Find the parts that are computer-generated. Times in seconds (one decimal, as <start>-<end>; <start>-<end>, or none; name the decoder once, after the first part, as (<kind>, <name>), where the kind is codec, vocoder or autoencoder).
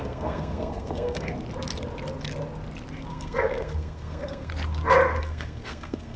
0.0-1.3 (codec, SNAC); 3.1-4.5; 5.2-6.2